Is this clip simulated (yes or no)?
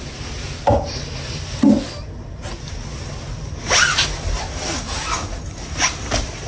no